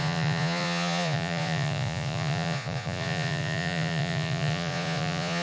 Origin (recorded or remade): remade